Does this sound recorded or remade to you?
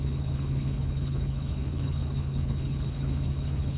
remade